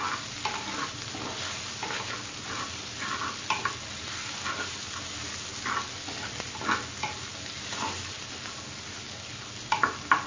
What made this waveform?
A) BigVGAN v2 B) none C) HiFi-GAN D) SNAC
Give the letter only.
B